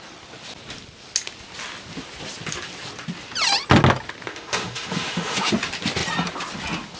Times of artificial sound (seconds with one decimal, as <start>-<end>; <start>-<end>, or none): 4.3-5.5